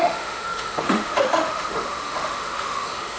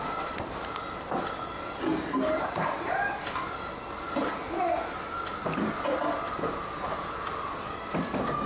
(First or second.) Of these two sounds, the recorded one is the second